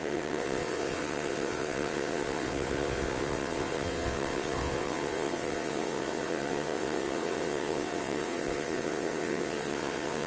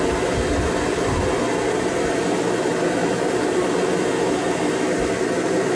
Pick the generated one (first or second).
first